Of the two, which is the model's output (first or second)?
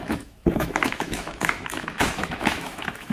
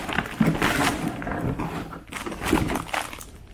first